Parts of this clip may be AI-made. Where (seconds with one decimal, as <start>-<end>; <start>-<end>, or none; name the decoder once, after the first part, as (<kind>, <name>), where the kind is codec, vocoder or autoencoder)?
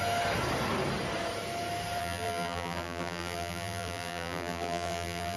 2.0-5.4 (vocoder, BigVGAN v2)